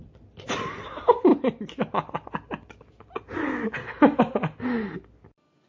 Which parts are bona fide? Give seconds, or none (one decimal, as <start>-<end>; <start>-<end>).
0.0-5.7